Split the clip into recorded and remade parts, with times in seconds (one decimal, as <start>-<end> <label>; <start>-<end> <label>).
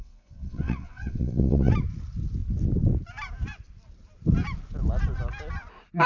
0.0-1.7 remade; 1.7-6.1 recorded